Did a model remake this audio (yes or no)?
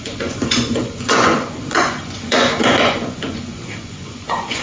yes